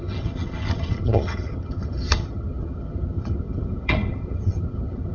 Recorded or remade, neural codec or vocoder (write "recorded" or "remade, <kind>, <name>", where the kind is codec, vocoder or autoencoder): remade, vocoder, HiFi-GAN